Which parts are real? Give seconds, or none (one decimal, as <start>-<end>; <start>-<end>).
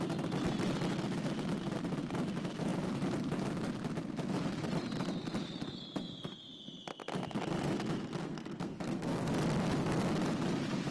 0.0-8.2; 9.3-10.9